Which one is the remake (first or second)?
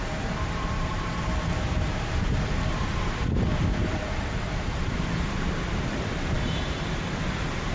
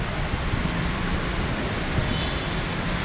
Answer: first